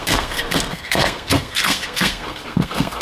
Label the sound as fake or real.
fake